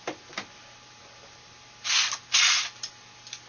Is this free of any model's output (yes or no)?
yes